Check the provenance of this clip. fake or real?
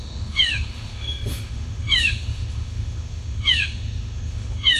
fake